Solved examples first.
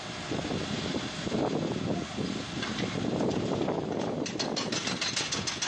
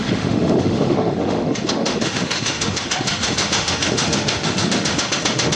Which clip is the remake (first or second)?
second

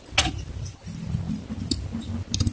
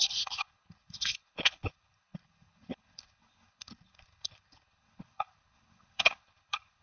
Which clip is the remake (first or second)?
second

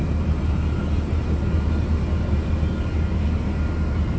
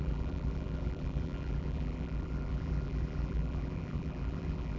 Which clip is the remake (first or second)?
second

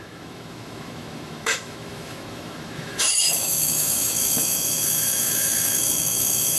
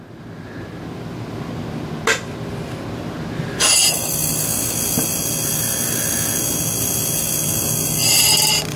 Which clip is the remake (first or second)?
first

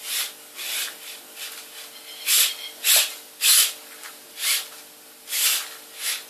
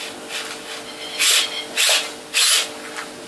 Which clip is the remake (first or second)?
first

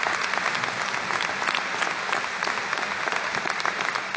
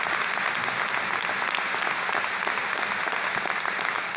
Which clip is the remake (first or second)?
first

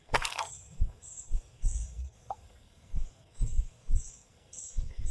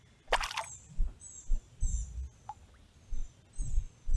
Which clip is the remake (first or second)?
first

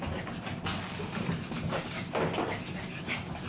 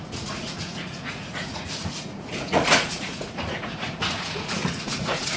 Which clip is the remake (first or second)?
second